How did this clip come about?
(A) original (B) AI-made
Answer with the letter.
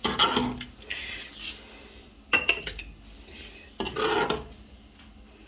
A